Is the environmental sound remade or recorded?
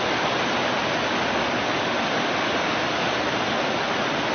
recorded